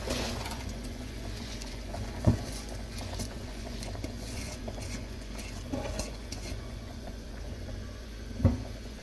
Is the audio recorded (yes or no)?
no